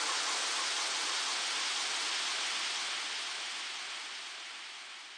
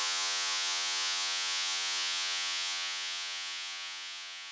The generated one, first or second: second